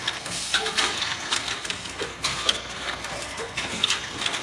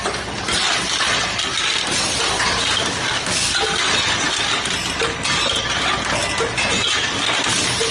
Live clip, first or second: second